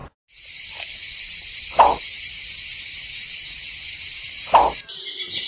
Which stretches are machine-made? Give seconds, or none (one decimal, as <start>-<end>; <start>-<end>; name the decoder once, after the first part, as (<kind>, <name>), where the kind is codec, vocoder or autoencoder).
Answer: none